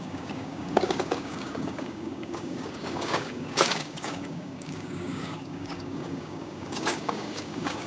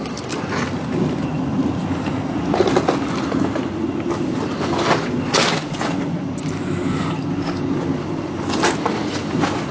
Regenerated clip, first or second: first